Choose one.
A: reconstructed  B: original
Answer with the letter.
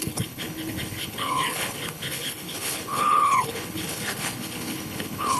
A